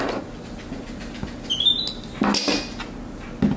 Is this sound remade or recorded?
recorded